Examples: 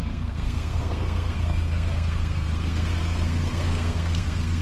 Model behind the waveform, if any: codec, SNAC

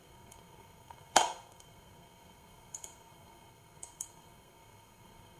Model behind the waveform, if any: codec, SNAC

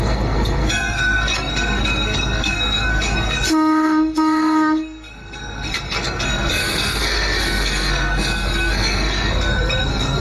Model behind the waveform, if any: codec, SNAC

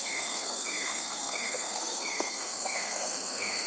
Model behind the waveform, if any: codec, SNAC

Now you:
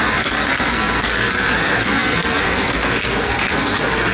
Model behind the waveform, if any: codec, SNAC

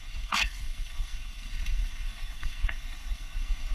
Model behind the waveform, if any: codec, SNAC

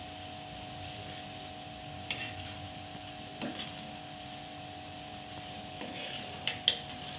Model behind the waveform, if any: none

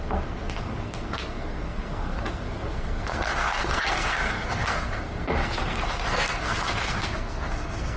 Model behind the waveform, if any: codec, SNAC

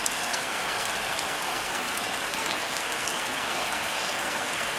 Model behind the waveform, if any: codec, SNAC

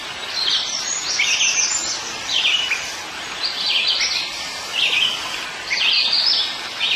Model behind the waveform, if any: none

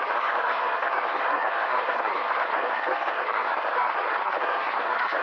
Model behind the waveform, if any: codec, SNAC